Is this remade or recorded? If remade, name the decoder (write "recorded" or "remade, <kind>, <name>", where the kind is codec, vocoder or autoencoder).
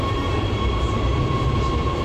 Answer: recorded